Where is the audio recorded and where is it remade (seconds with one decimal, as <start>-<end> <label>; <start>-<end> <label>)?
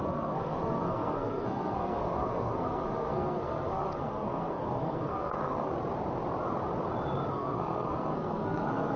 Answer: 0.0-5.7 remade; 5.7-7.3 recorded; 7.3-9.0 remade